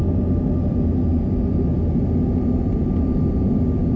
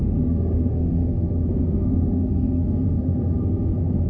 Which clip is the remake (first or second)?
second